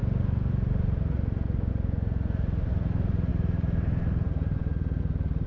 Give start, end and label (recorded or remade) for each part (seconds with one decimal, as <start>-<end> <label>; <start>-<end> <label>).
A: 0.0-5.5 recorded